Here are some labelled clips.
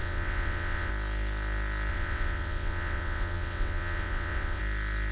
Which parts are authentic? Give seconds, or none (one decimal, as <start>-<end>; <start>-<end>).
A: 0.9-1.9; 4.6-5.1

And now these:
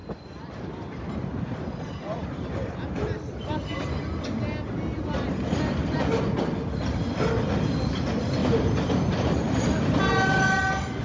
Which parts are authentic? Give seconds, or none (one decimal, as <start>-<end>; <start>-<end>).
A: 0.0-8.4; 9.6-11.0

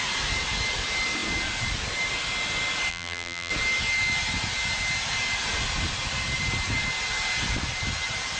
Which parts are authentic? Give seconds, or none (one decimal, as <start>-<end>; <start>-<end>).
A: 0.0-2.9; 3.5-8.4

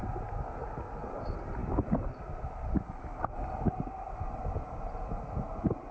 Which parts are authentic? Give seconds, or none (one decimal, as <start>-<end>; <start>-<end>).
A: 0.0-5.9